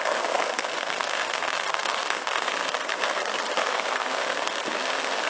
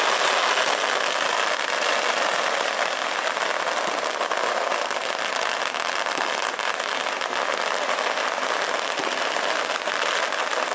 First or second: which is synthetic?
first